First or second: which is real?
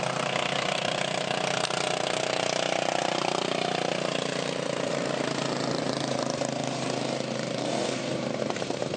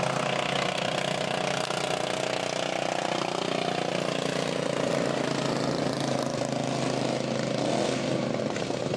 second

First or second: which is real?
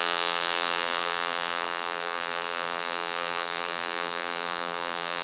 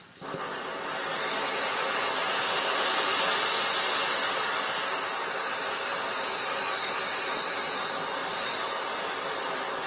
second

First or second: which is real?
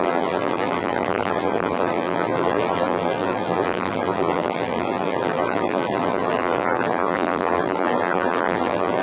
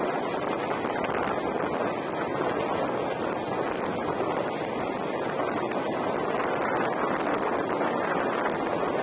second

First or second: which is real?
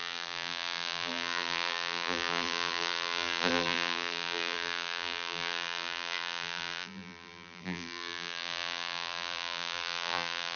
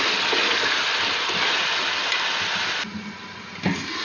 second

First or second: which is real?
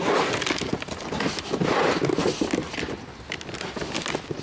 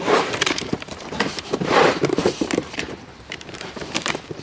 first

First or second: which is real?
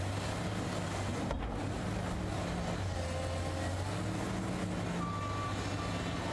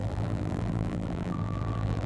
first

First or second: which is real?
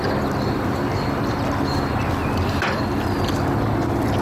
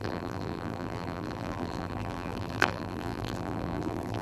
first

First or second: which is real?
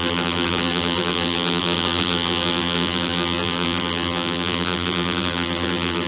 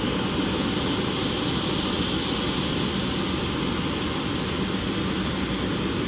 second